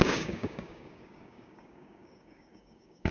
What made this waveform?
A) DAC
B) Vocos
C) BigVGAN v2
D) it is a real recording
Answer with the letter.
A